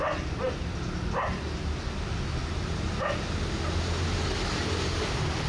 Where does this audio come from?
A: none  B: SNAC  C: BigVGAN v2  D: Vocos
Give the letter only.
A